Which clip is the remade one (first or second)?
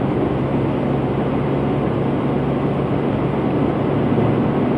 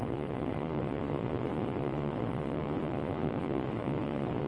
second